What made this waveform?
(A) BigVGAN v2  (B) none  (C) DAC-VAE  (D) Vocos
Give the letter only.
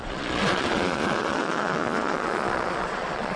D